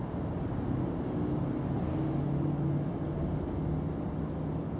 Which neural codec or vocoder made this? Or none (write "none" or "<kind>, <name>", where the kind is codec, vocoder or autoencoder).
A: none